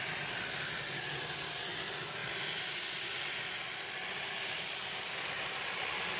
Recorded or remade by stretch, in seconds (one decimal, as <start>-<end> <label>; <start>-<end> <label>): 0.0-6.2 recorded